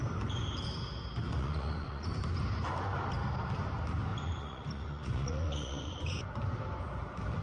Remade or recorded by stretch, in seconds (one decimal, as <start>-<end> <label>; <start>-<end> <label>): 0.0-1.3 recorded; 1.3-2.1 remade; 2.1-4.1 recorded; 4.1-6.3 remade; 6.3-7.4 recorded